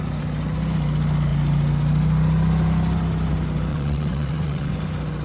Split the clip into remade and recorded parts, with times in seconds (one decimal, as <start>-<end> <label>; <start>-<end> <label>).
0.0-3.7 recorded; 3.7-4.7 remade; 4.7-5.2 recorded